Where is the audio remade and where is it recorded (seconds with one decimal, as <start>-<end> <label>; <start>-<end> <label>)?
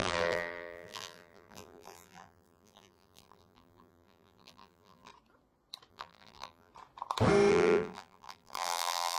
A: 0.0-5.1 remade; 5.1-5.9 recorded; 5.9-6.7 remade; 6.7-7.5 recorded; 7.5-9.2 remade